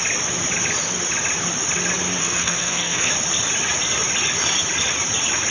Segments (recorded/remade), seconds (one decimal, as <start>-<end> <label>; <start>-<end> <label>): 0.0-2.2 recorded; 2.2-3.1 remade; 3.1-5.5 recorded

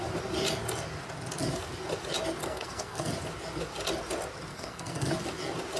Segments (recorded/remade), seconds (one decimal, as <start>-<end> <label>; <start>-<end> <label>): 0.0-2.4 recorded; 2.4-3.1 remade; 3.1-4.5 recorded; 4.5-5.1 remade; 5.1-5.8 recorded

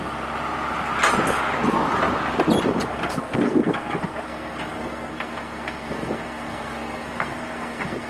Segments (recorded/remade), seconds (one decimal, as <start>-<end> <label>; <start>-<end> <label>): 0.0-2.9 recorded; 2.9-8.1 remade

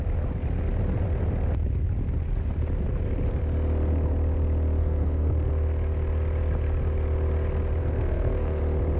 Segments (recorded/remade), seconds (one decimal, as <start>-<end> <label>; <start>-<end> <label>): 0.0-4.8 recorded; 4.8-5.5 remade; 5.5-7.8 recorded; 7.8-8.6 remade; 8.6-9.0 recorded

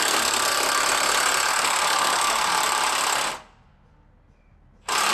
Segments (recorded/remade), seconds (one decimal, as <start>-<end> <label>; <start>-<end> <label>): 0.0-0.5 remade; 0.5-1.5 recorded; 1.5-2.5 remade; 2.5-5.1 recorded